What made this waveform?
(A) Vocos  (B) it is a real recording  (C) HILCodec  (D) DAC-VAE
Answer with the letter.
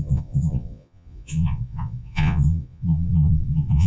A